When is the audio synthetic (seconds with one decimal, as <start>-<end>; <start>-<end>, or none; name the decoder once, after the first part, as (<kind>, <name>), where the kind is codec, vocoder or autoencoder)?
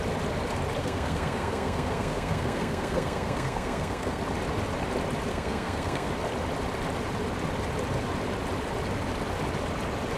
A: 0.8-4.2 (codec, SNAC); 5.3-6.1